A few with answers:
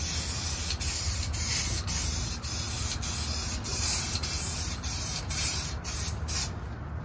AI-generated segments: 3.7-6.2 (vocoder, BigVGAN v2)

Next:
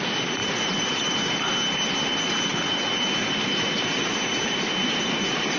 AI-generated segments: 0.4-1.4 (vocoder, BigVGAN v2)

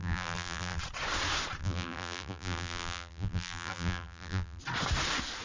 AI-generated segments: 0.0-0.8 (vocoder, BigVGAN v2); 1.6-4.6

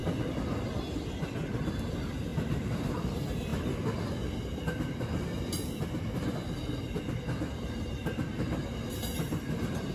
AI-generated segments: 2.3-2.9 (vocoder, BigVGAN v2)

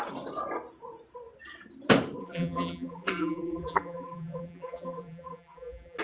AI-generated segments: 2.2-6.0 (vocoder, BigVGAN v2)